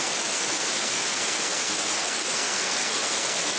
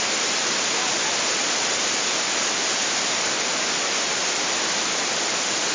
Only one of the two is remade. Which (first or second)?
first